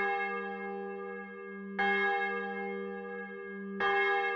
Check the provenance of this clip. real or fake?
real